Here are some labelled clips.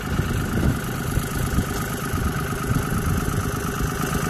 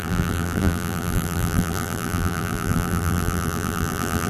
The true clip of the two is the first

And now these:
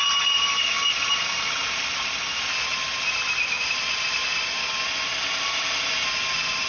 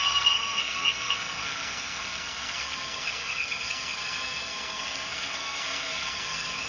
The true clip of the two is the first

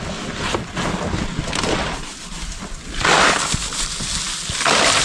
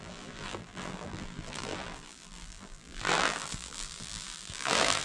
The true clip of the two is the first